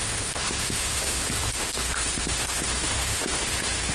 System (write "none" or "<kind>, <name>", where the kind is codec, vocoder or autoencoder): autoencoder, DAC-VAE